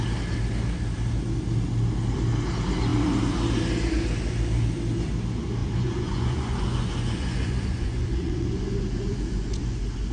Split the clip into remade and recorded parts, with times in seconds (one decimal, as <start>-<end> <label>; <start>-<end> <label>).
0.0-5.6 recorded; 5.6-10.1 remade